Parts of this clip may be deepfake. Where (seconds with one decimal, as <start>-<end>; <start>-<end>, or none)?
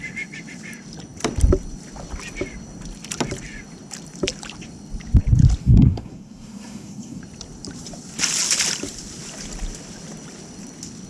5.6-7.2